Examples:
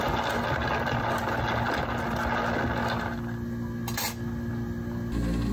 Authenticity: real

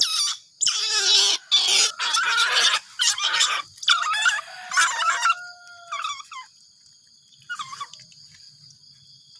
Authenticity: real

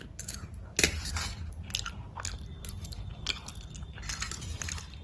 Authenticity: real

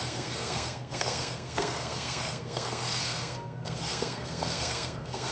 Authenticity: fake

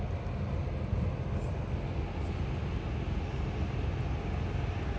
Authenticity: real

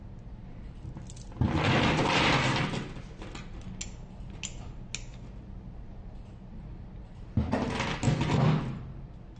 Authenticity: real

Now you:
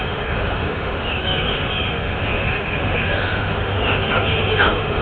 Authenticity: fake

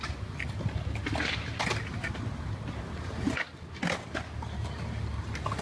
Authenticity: real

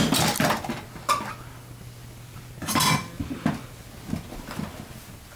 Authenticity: real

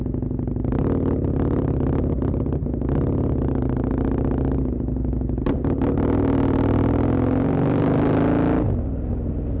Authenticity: real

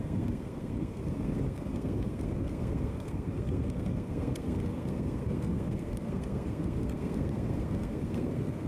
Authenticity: fake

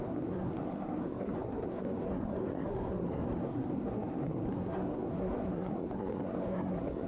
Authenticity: fake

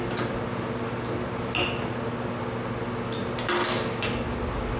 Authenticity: real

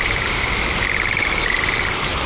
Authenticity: real